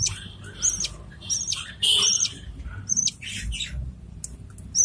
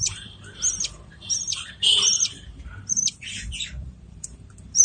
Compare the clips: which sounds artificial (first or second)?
second